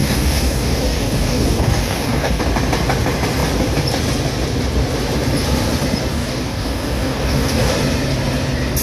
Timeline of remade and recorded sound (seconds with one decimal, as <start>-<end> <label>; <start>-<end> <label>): 0.0-2.4 remade; 2.4-6.1 recorded; 6.1-7.7 remade; 7.7-8.8 recorded